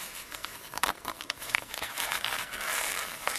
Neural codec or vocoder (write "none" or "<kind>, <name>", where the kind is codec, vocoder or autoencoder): codec, SNAC